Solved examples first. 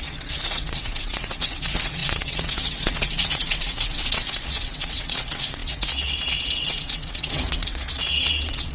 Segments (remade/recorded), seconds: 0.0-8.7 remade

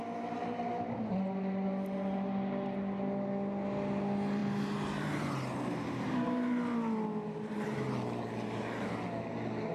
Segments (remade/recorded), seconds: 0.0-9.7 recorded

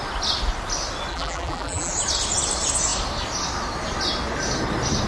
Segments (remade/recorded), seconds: 0.0-1.1 recorded; 1.1-1.9 remade; 1.9-5.1 recorded

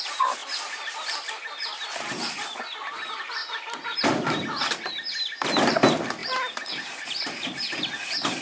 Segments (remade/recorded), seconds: 0.0-8.4 recorded

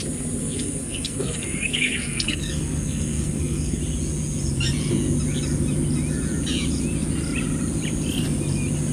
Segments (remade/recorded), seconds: 0.0-0.4 recorded; 0.4-3.8 remade; 3.8-8.9 recorded